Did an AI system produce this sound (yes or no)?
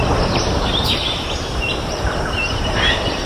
yes